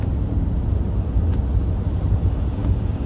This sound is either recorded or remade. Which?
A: recorded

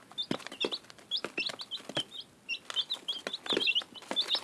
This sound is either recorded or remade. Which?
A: recorded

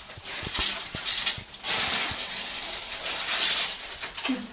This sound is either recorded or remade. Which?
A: recorded